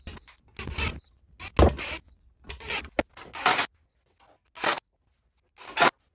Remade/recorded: recorded